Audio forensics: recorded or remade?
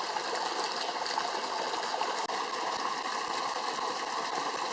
recorded